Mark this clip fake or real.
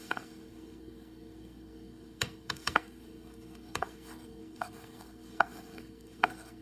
fake